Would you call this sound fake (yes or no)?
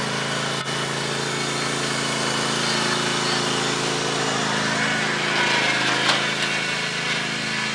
no